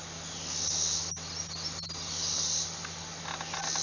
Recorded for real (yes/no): yes